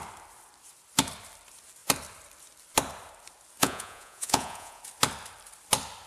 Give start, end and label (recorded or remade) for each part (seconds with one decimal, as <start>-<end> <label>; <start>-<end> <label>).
0.0-3.6 recorded; 3.6-4.8 remade; 4.8-6.1 recorded